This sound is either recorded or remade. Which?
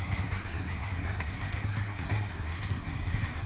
remade